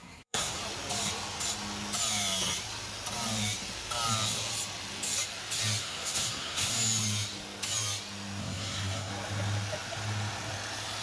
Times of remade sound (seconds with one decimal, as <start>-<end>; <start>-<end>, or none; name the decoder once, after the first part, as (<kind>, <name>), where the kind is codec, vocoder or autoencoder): 0.0-0.6 (codec, SNAC); 5.8-6.7; 8.4-9.1